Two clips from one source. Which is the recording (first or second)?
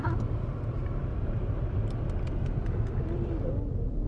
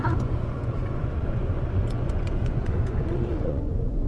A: first